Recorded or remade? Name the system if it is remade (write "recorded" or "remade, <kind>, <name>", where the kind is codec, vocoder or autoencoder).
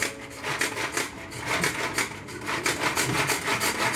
recorded